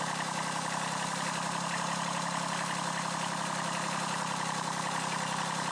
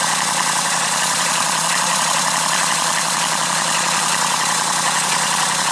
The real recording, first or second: first